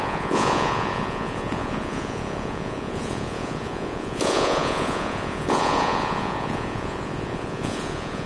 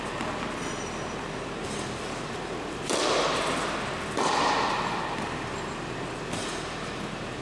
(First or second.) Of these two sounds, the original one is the second